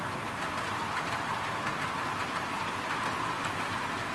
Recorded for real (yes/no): yes